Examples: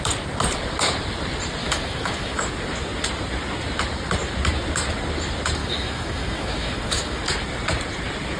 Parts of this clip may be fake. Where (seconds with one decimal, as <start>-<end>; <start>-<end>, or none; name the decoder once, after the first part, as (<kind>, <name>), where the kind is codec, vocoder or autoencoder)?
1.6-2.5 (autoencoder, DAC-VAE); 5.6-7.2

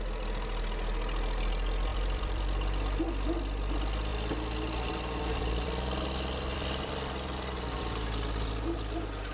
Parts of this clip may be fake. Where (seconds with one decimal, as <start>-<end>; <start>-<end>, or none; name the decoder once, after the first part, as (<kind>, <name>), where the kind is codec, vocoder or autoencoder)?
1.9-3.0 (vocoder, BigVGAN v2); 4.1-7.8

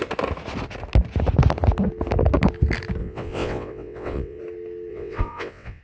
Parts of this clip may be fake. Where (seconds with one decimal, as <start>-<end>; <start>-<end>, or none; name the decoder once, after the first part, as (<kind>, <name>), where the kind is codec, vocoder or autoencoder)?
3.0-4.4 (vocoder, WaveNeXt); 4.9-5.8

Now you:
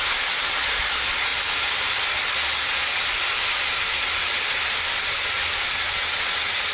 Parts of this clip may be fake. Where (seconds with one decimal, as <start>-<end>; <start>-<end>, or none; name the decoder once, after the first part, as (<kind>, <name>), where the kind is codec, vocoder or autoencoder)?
none

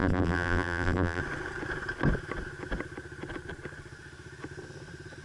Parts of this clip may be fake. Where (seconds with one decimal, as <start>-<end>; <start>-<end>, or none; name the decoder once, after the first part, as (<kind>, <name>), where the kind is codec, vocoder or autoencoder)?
0.0-1.2 (vocoder, BigVGAN v2)

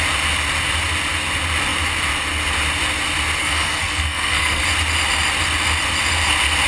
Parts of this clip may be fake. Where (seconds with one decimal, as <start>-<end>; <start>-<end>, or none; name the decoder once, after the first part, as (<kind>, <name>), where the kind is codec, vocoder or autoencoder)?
3.4-4.6 (codec, SNAC)

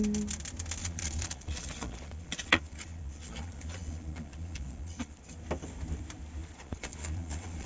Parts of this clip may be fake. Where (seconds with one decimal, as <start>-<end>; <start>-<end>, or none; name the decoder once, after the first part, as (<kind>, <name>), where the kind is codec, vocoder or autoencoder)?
0.8-5.2 (vocoder, Vocos); 6.4-7.7